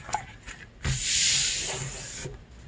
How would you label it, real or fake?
real